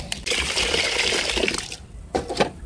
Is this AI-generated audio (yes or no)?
yes